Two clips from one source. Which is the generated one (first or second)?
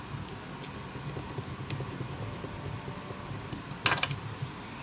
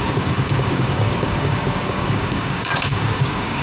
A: second